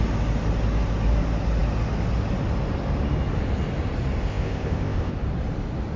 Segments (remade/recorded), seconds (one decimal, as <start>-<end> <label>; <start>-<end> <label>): 0.0-4.2 recorded; 4.2-5.1 remade; 5.1-6.0 recorded

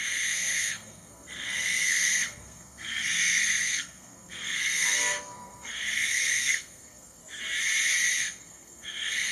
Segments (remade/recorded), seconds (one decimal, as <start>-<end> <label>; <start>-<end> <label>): 0.0-7.2 remade; 7.2-8.2 recorded; 8.2-9.3 remade

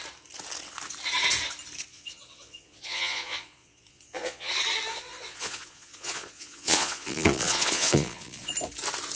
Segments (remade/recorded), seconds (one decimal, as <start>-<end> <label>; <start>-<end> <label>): 0.0-1.9 recorded; 1.9-4.5 remade; 4.5-4.9 recorded; 4.9-8.5 remade; 8.5-9.2 recorded